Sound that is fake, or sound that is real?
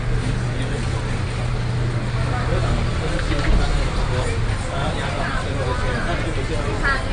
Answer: real